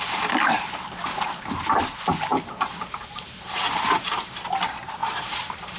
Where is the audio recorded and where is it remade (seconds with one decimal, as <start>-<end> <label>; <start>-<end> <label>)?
0.0-2.3 recorded; 2.3-4.4 remade; 4.4-5.0 recorded; 5.0-5.8 remade